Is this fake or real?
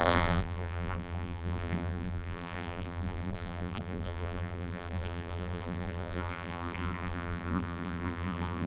fake